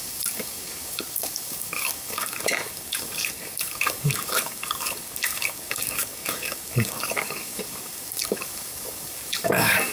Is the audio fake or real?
fake